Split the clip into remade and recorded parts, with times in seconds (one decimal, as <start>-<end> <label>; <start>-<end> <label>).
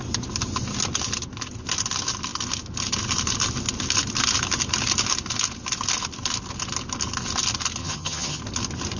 0.0-7.8 recorded; 7.8-8.4 remade; 8.4-9.0 recorded